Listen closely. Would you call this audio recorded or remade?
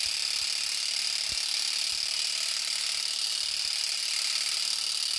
recorded